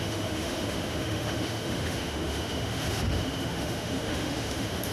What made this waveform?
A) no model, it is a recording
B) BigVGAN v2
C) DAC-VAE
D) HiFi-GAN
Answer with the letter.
C